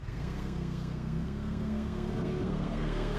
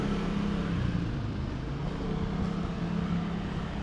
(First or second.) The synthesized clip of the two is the first